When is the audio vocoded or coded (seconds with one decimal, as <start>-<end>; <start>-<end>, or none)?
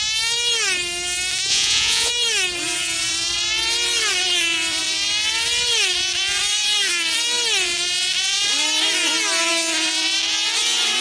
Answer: 1.5-2.1